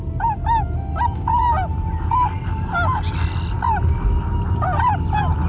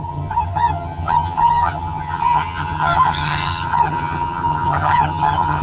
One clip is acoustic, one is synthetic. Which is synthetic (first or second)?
second